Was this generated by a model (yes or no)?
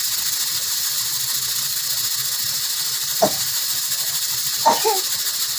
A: no